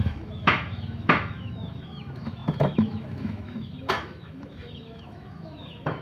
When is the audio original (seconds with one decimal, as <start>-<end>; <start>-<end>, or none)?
none